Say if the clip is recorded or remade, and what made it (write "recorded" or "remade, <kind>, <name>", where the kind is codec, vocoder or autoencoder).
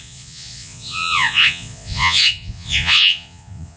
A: remade, vocoder, Vocos